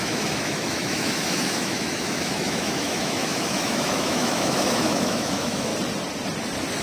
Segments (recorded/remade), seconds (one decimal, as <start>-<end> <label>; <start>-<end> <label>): 0.0-5.7 remade; 5.7-6.8 recorded